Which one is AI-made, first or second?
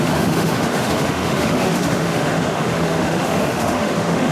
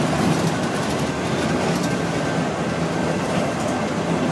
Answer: first